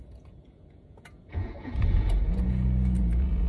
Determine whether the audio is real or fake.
fake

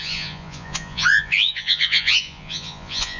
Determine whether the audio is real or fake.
fake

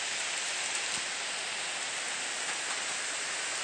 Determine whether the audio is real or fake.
real